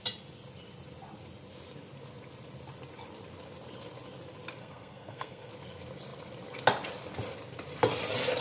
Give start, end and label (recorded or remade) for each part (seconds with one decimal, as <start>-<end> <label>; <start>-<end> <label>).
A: 0.0-4.6 recorded; 4.6-5.5 remade; 5.5-8.4 recorded